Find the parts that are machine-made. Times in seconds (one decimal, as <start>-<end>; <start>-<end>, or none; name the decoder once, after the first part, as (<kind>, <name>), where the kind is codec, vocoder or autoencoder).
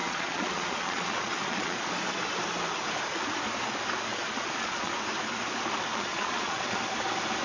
0.0-1.9 (vocoder, Vocos); 4.1-4.9; 5.9-6.8